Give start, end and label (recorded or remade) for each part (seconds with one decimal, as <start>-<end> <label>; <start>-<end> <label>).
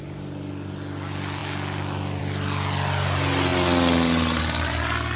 0.0-5.2 recorded